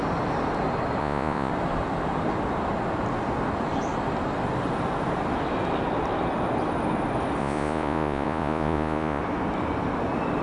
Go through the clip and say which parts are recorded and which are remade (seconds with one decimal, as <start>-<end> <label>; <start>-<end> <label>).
0.0-1.0 recorded; 1.0-1.5 remade; 1.5-7.4 recorded; 7.4-9.2 remade; 9.2-10.4 recorded